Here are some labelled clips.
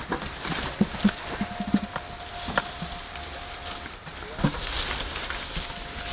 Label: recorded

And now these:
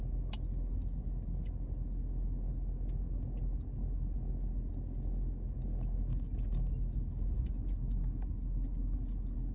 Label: recorded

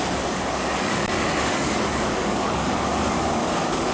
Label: remade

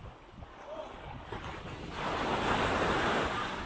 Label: recorded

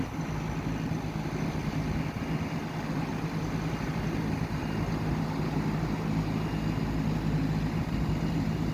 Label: recorded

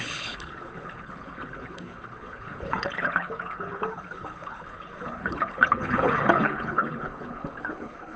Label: remade